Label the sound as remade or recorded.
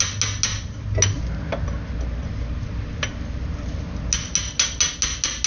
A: recorded